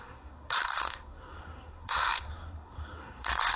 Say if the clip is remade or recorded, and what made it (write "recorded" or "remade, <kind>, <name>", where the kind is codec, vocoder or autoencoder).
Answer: remade, codec, SNAC